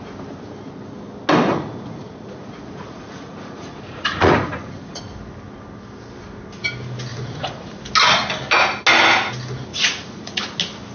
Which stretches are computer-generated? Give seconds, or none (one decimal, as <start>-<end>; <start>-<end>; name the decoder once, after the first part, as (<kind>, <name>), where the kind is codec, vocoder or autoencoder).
1.5-5.0 (vocoder, Vocos); 7.1-7.8; 9.7-10.4